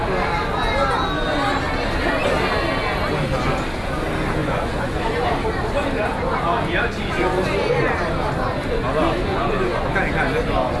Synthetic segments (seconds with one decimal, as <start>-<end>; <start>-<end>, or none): 4.4-5.0; 9.3-9.9